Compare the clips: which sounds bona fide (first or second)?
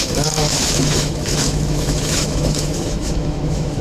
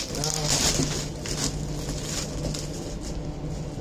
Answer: second